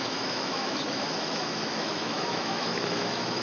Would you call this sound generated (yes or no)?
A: yes